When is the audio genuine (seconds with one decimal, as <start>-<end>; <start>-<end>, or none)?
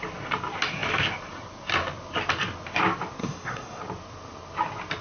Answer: 0.0-3.2; 3.8-5.0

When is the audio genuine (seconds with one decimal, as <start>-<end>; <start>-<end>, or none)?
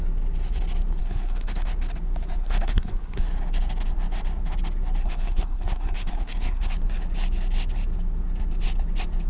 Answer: 0.0-1.0; 1.7-2.4; 3.2-5.0; 6.7-9.3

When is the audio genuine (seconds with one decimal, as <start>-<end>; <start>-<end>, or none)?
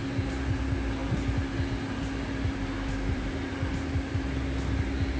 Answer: 0.0-1.0; 4.1-5.2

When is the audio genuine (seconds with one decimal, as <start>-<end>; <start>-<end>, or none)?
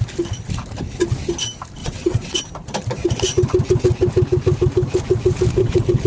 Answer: 0.0-1.8; 2.4-5.6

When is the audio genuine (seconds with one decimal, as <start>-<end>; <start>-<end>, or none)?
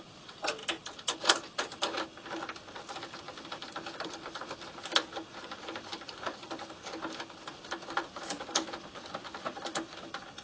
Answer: 0.0-10.4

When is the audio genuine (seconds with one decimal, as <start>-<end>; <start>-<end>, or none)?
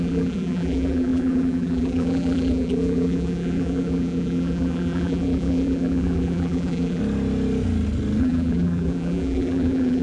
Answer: 7.0-8.2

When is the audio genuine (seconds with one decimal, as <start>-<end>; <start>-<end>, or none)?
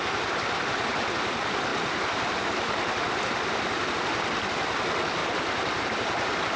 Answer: 0.0-5.2; 5.8-6.6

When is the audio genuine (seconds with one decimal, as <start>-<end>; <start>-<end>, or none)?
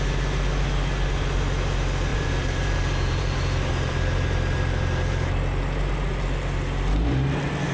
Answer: 0.0-2.1; 5.3-7.7